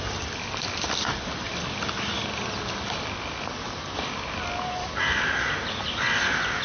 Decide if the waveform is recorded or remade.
recorded